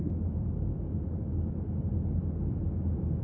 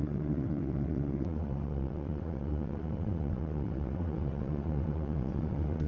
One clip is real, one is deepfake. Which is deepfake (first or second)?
second